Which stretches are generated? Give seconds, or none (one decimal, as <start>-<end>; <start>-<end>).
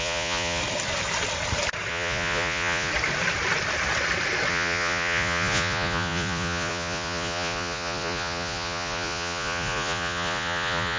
0.0-0.6; 1.9-2.9; 4.5-11.0